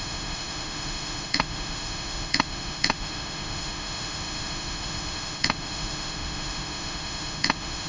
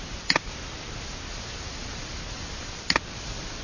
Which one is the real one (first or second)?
second